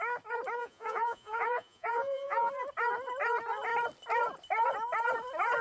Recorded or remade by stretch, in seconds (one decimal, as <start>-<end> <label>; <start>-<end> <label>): 0.0-0.6 recorded; 0.6-2.5 remade; 2.5-5.6 recorded